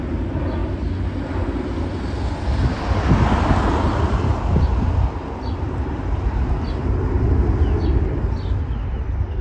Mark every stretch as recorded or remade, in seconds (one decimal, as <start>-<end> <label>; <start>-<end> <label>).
0.0-9.4 recorded